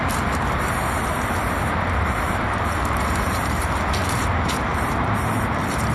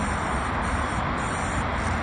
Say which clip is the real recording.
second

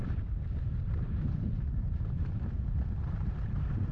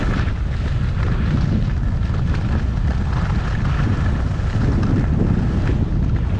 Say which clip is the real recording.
second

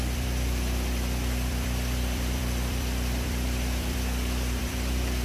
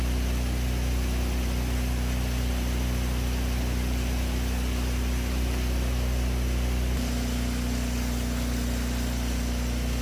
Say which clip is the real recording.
second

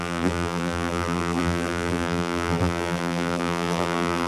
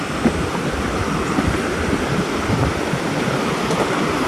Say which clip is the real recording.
second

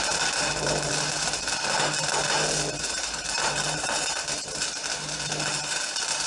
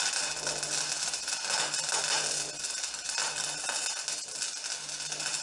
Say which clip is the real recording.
second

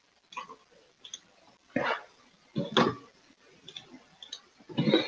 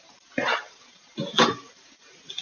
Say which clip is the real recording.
first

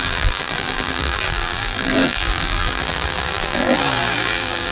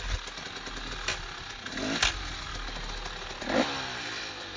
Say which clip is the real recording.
second